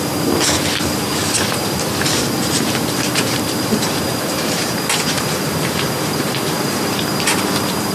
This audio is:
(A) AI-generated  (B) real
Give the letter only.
A